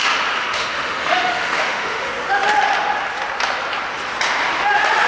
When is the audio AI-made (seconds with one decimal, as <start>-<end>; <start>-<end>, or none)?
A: 0.4-2.1